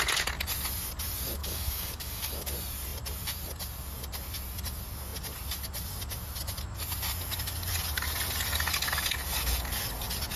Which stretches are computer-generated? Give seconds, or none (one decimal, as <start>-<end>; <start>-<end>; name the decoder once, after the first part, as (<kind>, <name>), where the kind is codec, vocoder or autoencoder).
1.4-2.3 (codec, DAC)